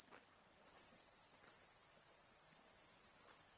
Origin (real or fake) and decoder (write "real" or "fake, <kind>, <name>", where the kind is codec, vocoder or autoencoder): real